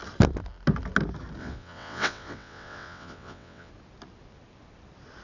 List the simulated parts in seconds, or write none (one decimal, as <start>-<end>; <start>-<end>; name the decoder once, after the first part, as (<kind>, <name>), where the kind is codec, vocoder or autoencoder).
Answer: 1.4-3.7 (vocoder, WaveNeXt)